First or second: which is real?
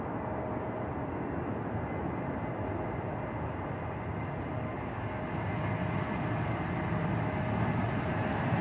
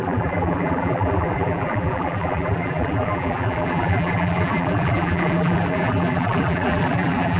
first